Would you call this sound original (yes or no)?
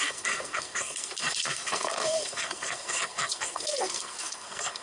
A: no